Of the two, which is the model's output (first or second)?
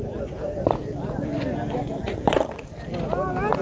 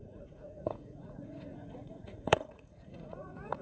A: second